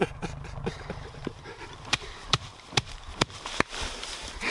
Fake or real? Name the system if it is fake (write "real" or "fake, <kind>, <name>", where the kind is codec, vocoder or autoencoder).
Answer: fake, vocoder, BigVGAN v2